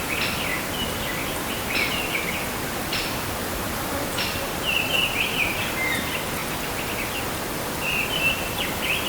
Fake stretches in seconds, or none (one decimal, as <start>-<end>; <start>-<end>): none